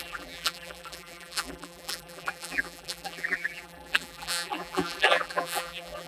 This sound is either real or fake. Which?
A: fake